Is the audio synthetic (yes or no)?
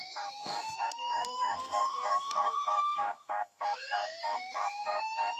yes